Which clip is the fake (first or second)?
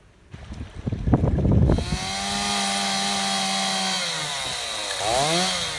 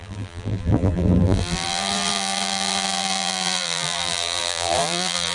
second